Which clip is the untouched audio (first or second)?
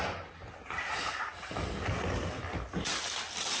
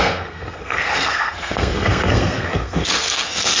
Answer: first